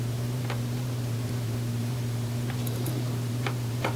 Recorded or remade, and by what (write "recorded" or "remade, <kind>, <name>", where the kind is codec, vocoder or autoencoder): remade, vocoder, BigVGAN v2